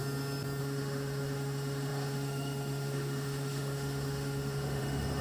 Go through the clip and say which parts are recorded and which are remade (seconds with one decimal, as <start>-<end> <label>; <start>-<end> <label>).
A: 0.0-0.6 recorded; 0.6-5.2 remade

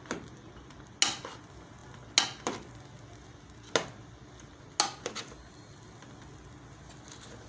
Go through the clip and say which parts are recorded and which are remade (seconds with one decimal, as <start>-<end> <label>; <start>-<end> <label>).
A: 0.0-7.5 recorded

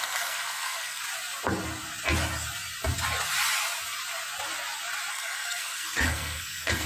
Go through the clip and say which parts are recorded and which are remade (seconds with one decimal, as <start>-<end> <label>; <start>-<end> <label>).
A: 0.0-1.0 remade; 1.0-5.1 recorded; 5.1-6.9 remade

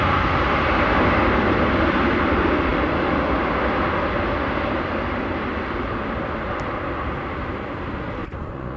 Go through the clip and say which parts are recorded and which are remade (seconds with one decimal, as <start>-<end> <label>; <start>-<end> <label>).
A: 0.0-8.2 recorded; 8.2-8.8 remade

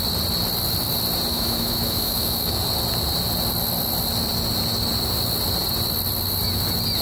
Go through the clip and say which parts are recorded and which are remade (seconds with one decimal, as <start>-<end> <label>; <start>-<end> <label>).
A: 0.0-1.3 recorded; 1.3-2.6 remade; 2.6-7.0 recorded